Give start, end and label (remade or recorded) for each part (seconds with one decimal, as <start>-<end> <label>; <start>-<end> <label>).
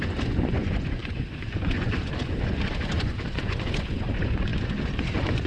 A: 0.0-5.5 remade